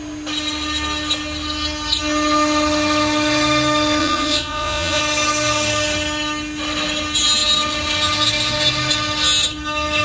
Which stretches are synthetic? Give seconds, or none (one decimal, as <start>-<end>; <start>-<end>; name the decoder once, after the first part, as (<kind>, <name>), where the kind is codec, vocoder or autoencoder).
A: 4.0-5.0 (vocoder, Vocos)